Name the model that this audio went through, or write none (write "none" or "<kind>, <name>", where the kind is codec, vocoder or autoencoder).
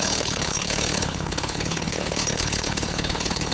codec, HILCodec